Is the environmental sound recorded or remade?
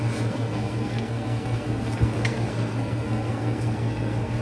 remade